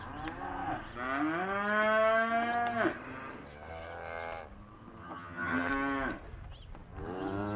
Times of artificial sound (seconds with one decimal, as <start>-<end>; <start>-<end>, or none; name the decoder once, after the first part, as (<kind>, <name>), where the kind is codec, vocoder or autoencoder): 5.0-5.7 (vocoder, HiFi-GAN)